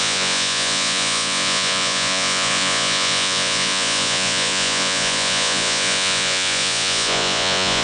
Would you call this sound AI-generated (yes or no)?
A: yes